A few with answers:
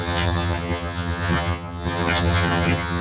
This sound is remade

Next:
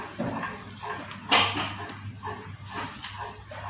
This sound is recorded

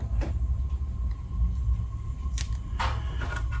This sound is recorded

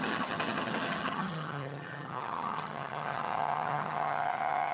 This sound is remade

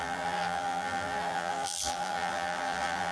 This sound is remade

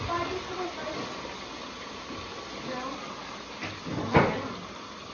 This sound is recorded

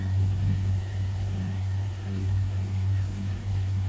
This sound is remade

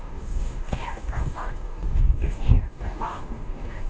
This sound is remade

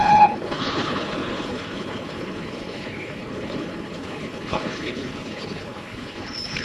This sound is remade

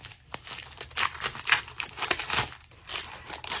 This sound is recorded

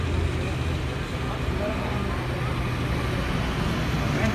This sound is recorded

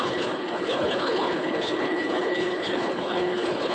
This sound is remade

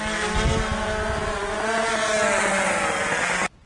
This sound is recorded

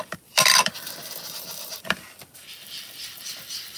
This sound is remade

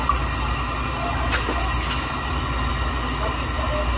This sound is recorded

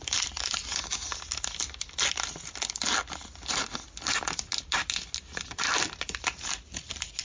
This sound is recorded